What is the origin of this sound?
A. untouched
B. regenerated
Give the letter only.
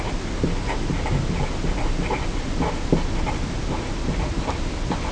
A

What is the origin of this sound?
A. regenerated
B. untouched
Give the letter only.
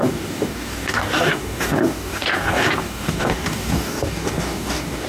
A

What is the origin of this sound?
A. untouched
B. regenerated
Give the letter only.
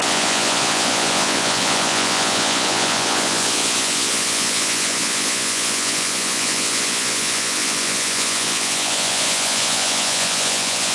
B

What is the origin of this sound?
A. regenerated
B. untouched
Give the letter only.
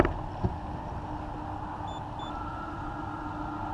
B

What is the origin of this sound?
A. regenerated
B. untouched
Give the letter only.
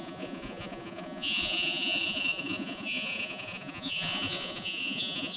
A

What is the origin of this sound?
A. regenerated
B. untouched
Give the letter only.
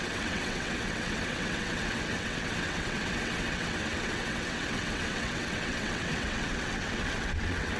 A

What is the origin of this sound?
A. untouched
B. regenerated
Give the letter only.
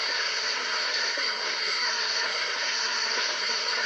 B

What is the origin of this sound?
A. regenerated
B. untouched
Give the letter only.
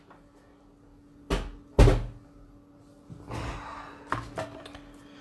B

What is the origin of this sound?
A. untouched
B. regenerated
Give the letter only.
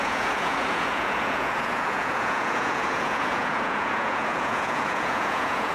B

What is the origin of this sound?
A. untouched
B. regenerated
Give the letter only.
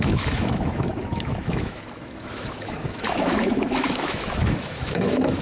B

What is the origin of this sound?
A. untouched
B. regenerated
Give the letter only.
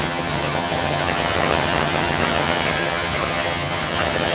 B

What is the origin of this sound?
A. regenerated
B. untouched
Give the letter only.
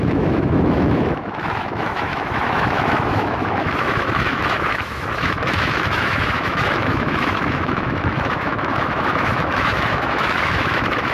A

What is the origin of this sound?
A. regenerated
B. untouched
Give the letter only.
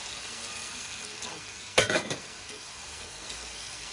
A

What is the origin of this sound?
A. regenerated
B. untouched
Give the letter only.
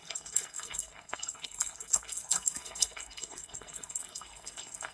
A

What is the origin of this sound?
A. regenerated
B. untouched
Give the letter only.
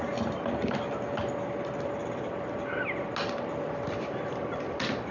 B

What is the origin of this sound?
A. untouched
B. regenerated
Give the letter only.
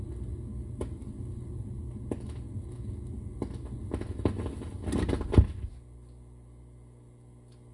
A